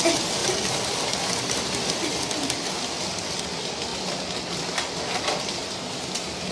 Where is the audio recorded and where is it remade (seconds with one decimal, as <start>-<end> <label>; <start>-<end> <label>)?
0.0-0.4 recorded; 0.4-1.0 remade; 1.0-6.5 recorded